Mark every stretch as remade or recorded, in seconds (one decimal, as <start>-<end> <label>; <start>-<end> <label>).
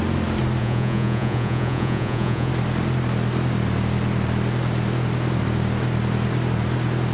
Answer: 0.0-0.6 recorded; 0.6-2.5 remade; 2.5-7.1 recorded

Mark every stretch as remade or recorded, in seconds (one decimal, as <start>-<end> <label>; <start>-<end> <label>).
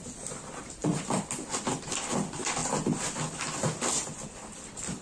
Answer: 0.0-0.8 recorded; 0.8-1.5 remade; 1.5-5.0 recorded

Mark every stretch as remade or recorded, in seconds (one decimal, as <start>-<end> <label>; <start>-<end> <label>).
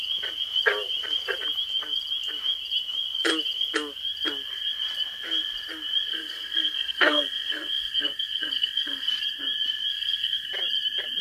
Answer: 0.0-6.1 recorded; 6.1-9.1 remade; 9.1-9.9 recorded; 9.9-10.5 remade; 10.5-11.2 recorded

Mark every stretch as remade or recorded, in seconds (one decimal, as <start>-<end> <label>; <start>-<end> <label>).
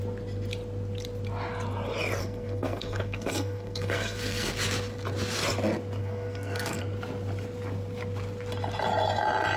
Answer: 0.0-2.2 recorded; 2.2-4.5 remade; 4.5-6.0 recorded; 6.0-6.8 remade; 6.8-9.6 recorded